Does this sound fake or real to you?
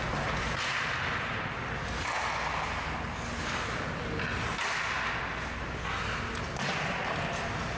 real